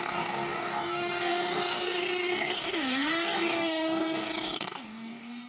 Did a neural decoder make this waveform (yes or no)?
yes